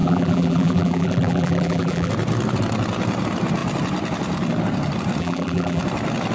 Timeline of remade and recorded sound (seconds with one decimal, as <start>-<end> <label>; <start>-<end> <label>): 0.0-2.1 remade; 2.1-5.2 recorded; 5.2-5.8 remade; 5.8-6.3 recorded

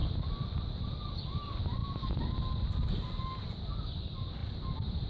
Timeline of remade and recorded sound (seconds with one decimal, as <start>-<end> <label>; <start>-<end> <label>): 0.0-0.6 remade; 0.6-1.8 recorded; 1.8-2.9 remade; 2.9-4.4 recorded; 4.4-5.1 remade

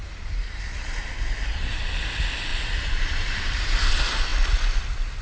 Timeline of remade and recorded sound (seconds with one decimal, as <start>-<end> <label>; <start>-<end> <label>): 0.0-0.6 remade; 0.6-2.5 recorded; 2.5-3.8 remade; 3.8-5.2 recorded

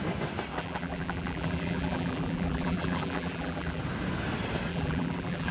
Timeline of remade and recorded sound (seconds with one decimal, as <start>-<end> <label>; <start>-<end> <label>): 0.0-0.5 recorded; 0.5-3.8 remade; 3.8-4.7 recorded; 4.7-5.5 remade

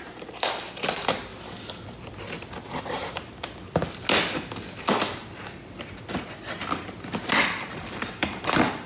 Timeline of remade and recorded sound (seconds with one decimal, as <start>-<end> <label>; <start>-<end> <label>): 0.0-1.3 remade; 1.3-2.8 recorded; 2.8-3.3 remade; 3.3-7.4 recorded; 7.4-8.9 remade

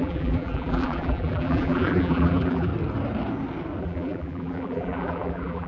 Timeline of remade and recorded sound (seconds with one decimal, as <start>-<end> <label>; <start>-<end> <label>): 0.0-2.7 remade; 2.7-3.8 recorded; 3.8-5.7 remade

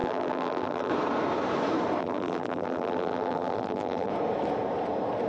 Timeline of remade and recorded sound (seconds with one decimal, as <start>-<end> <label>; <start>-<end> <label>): 0.0-0.9 remade; 0.9-2.0 recorded; 2.0-4.1 remade; 4.1-5.3 recorded

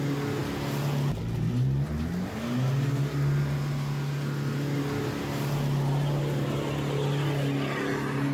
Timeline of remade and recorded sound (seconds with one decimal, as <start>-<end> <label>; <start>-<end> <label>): 0.0-8.3 recorded